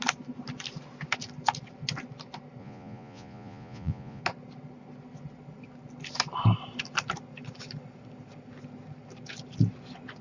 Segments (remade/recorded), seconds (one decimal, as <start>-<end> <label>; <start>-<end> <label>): 0.0-2.6 recorded; 2.6-4.2 remade; 4.2-10.2 recorded